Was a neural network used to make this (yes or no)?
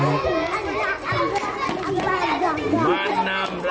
no